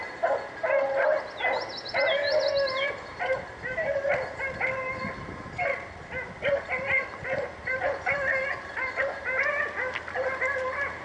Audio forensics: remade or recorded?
recorded